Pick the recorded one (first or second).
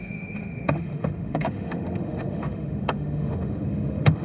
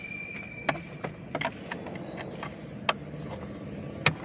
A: second